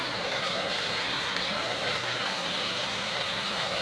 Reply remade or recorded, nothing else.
remade